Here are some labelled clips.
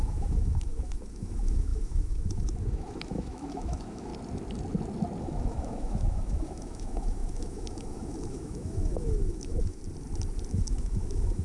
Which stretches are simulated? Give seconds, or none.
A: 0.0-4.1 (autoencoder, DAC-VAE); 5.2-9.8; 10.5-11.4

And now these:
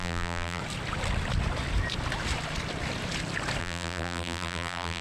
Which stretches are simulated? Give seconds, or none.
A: 0.0-0.6 (vocoder, BigVGAN v2); 3.6-5.0

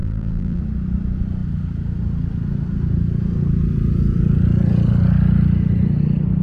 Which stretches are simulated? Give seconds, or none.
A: 0.0-0.6 (vocoder, BigVGAN v2)

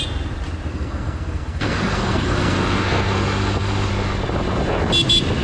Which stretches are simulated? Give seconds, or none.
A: 0.7-3.9 (codec, SNAC)

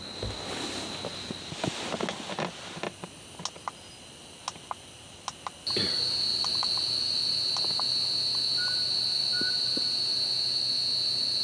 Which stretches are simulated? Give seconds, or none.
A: 6.3-7.2 (vocoder, BigVGAN v2)

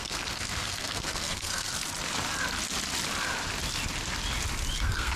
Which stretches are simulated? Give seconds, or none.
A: 0.0-1.7 (codec, SNAC); 4.8-5.2

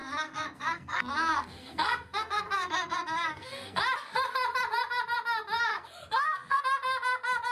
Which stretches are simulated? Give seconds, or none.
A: 0.0-3.8 (codec, SNAC); 5.7-6.6